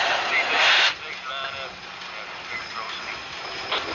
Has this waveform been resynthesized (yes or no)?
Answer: no